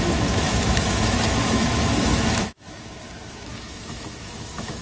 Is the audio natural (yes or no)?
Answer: no